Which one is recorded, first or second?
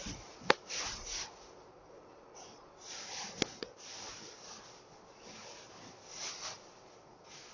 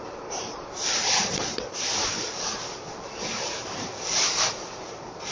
first